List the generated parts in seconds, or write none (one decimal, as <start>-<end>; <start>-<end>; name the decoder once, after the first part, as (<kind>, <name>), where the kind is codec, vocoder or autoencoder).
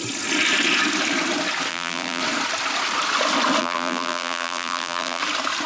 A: 1.7-2.2 (vocoder, BigVGAN v2); 3.6-5.2